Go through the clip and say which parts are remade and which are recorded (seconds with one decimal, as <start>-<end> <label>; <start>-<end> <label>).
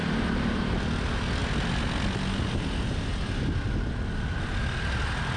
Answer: 0.0-0.6 remade; 0.6-5.4 recorded